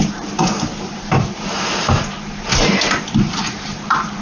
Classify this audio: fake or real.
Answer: fake